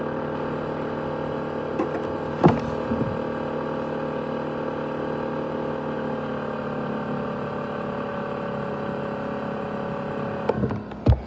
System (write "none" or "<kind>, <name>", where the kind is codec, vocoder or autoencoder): none